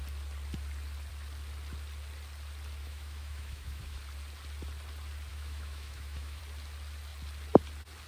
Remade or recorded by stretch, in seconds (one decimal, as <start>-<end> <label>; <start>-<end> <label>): 0.0-2.8 recorded; 2.8-4.0 remade; 4.0-5.3 recorded; 5.3-6.4 remade; 6.4-8.1 recorded